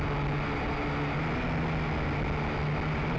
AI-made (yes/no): no